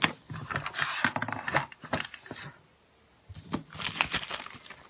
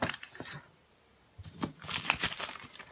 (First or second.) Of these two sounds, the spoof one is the second